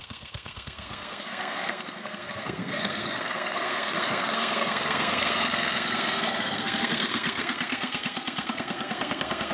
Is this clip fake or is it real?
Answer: fake